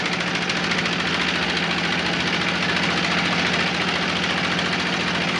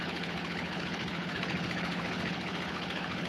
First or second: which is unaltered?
first